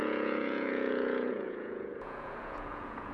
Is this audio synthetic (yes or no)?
yes